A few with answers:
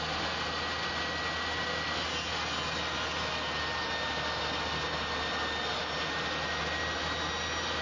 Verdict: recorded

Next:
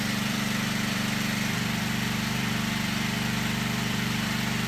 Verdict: remade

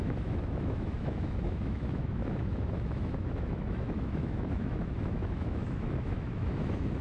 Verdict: remade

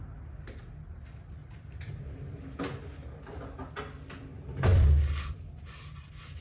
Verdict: recorded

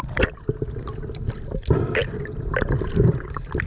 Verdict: recorded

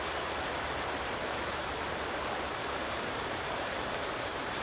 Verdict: remade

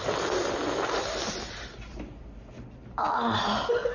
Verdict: recorded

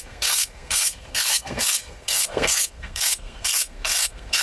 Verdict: remade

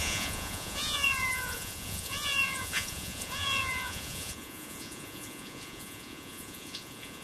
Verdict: remade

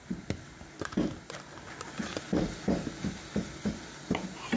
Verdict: recorded